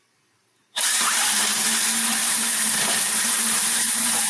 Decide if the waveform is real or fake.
fake